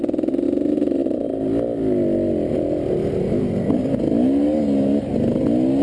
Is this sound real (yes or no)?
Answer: yes